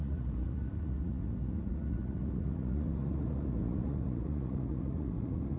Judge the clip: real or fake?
fake